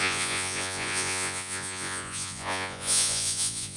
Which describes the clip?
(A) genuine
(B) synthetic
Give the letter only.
B